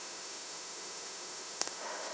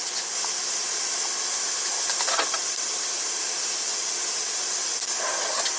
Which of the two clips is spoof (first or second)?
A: first